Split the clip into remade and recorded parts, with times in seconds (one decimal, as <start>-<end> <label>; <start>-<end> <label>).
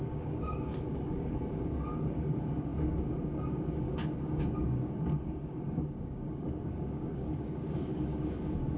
0.0-8.8 remade